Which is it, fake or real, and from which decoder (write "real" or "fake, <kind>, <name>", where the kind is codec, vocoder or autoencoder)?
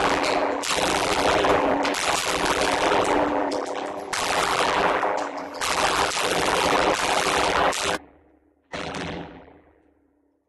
fake, vocoder, BigVGAN v2